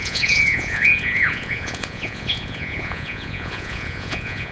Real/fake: fake